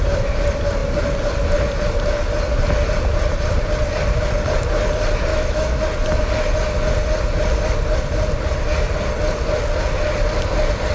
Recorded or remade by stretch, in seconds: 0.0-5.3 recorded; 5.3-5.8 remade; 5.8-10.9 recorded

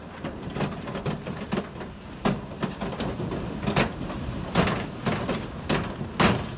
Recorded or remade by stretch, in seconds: 0.0-6.6 recorded

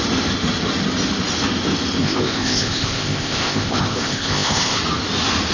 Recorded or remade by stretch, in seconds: 0.0-2.0 recorded; 2.0-4.8 remade; 4.8-5.5 recorded